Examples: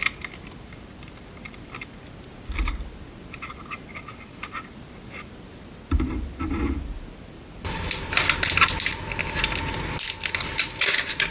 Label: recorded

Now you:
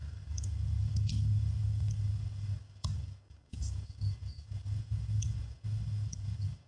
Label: remade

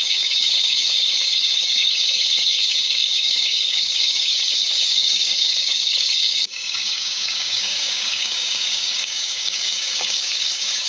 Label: remade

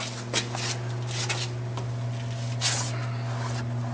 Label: recorded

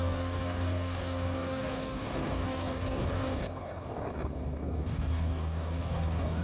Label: remade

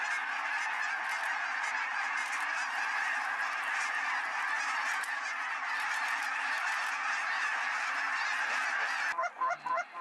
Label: recorded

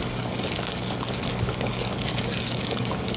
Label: remade